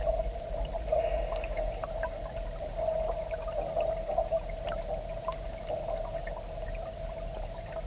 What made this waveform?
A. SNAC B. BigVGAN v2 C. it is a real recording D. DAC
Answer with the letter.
C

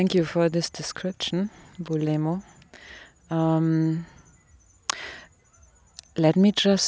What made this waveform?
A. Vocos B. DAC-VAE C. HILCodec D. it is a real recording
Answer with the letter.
D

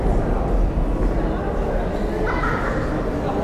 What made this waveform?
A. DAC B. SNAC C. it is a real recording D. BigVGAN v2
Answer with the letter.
C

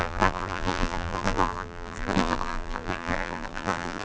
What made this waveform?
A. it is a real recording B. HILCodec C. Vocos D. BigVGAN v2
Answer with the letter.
D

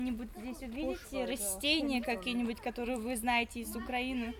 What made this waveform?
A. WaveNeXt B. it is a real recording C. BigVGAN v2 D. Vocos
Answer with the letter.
B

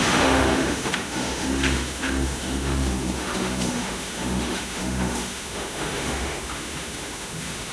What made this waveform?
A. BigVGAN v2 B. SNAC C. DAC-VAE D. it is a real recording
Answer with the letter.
C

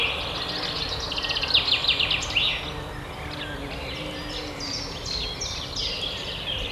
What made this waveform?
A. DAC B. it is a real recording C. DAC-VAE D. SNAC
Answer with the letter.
B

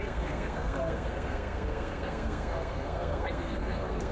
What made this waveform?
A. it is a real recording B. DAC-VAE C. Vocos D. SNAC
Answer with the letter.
D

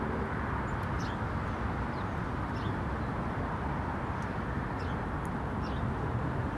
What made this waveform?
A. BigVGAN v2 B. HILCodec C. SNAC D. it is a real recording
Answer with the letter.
D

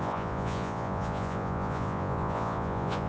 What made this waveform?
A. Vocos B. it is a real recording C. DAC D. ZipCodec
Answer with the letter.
A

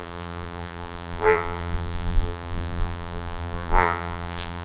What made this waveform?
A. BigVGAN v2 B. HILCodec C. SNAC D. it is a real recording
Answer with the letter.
A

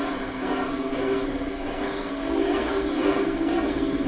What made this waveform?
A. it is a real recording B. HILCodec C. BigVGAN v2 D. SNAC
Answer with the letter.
D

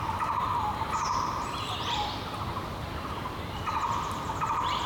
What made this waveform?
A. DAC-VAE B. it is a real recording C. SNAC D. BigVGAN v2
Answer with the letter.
B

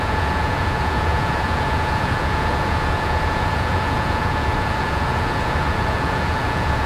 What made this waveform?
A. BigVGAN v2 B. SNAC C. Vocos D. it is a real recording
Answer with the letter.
C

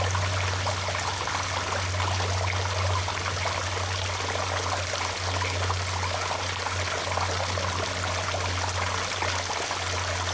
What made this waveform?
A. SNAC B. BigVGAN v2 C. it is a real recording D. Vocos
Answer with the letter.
C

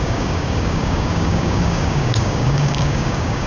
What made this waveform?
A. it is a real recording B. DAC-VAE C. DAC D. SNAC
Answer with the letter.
C